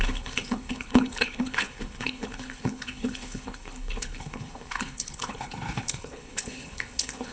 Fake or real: fake